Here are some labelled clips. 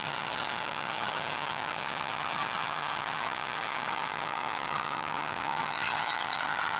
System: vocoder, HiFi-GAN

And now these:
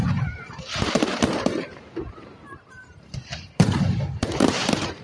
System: vocoder, BigVGAN v2